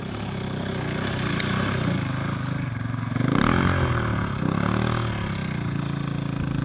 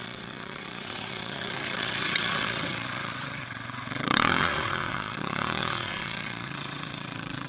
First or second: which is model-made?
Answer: second